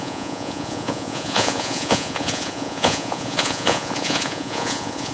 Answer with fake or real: fake